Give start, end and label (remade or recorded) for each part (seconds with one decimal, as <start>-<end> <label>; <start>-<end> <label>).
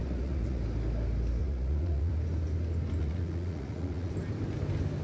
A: 0.0-0.6 remade; 0.6-1.4 recorded; 1.4-2.1 remade; 2.1-3.0 recorded; 3.0-4.1 remade; 4.1-5.0 recorded